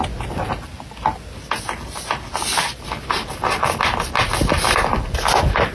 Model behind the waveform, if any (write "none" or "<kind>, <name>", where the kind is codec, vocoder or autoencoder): none